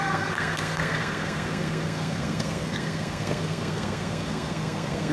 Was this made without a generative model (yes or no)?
no